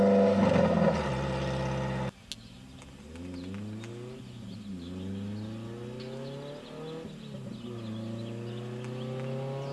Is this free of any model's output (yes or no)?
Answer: yes